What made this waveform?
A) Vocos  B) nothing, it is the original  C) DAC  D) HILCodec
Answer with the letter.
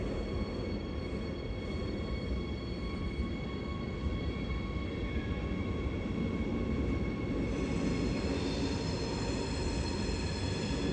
B